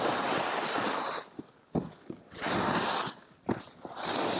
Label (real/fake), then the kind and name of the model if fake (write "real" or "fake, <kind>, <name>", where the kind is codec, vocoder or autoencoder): real